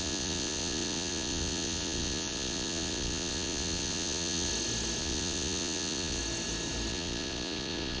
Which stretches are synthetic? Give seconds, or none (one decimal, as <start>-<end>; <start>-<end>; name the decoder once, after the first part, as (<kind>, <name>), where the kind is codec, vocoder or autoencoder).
0.0-4.5 (vocoder, Vocos); 5.0-6.2; 6.9-8.0